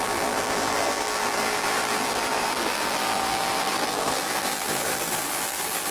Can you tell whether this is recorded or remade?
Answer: remade